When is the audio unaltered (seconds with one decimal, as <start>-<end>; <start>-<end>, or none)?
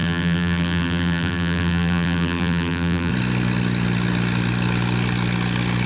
3.1-5.9